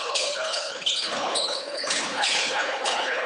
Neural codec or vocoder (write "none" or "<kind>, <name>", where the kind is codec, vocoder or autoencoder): codec, HILCodec